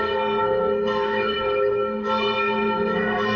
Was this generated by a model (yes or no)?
yes